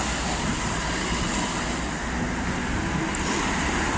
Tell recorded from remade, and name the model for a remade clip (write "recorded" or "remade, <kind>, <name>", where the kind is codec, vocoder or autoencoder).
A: recorded